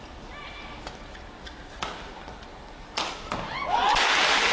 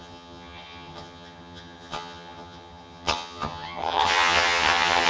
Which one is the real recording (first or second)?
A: first